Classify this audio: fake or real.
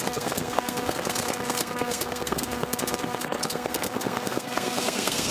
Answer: fake